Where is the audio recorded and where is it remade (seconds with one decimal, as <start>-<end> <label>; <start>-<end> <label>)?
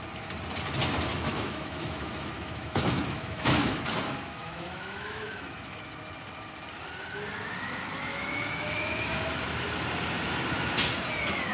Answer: 0.0-1.1 recorded; 1.1-3.8 remade; 3.8-4.4 recorded; 4.4-5.8 remade; 5.8-8.1 recorded; 8.1-9.1 remade; 9.1-11.5 recorded